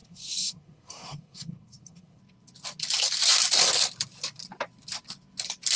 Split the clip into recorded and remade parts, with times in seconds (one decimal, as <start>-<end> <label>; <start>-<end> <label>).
0.0-2.2 remade; 2.2-5.8 recorded